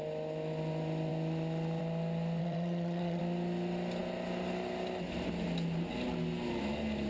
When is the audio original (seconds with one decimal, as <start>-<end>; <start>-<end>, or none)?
0.0-2.4; 3.2-7.1

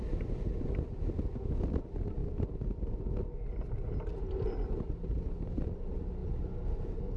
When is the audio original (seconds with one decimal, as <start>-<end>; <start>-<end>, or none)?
0.0-7.2

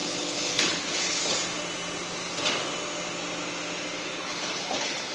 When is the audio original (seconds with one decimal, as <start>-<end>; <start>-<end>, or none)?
1.2-4.1

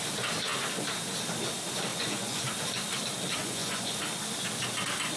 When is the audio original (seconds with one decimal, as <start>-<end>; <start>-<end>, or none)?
0.0-1.9; 2.4-3.4; 4.0-5.2

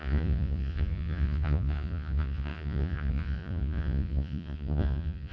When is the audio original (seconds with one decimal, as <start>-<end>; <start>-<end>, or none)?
none

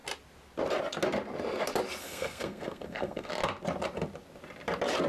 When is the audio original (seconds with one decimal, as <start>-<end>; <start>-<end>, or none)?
0.0-2.0; 3.3-5.1

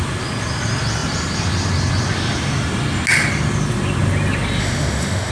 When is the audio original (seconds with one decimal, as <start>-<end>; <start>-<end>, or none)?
0.0-4.6

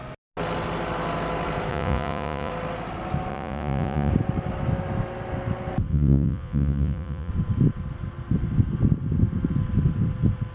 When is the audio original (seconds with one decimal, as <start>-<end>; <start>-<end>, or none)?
0.0-1.7; 2.5-3.3; 4.1-5.9; 7.3-10.5